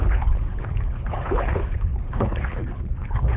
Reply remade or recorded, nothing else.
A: remade